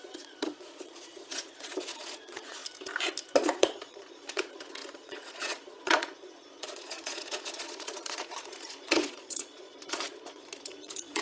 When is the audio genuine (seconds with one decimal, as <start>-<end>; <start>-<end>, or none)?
2.6-3.4